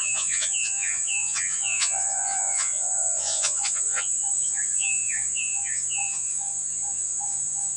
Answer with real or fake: fake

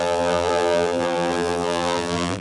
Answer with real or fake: fake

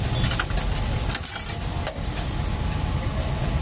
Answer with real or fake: real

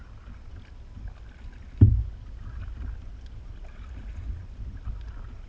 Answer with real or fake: real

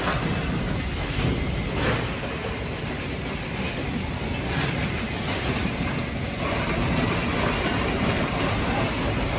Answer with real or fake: real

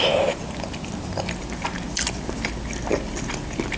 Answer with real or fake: real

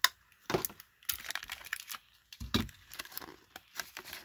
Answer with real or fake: real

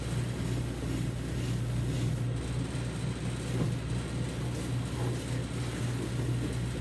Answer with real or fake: real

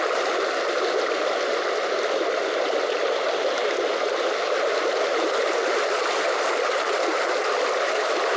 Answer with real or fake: real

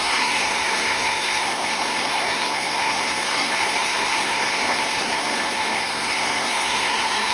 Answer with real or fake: fake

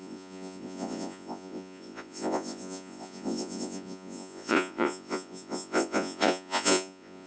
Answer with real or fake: fake